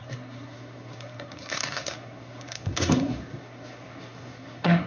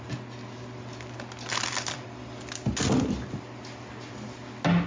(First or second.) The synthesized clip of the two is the first